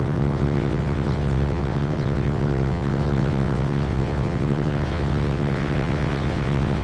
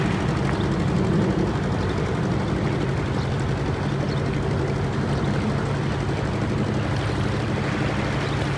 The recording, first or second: second